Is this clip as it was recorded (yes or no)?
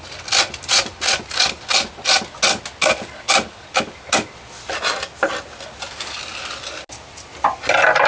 yes